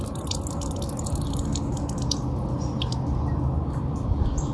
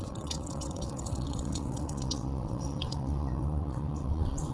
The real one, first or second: first